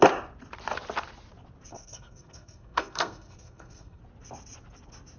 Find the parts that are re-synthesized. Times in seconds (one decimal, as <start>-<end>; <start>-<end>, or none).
1.7-4.0